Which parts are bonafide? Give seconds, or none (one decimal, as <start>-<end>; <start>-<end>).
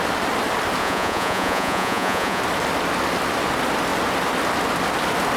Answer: 0.0-0.8; 2.4-5.4